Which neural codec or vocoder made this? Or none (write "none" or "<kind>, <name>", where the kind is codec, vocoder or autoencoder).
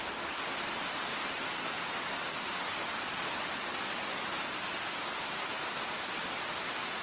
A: none